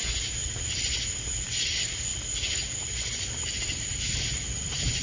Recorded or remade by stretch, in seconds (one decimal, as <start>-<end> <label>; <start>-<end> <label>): 0.0-5.0 recorded